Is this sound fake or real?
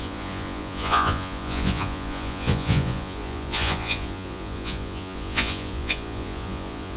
fake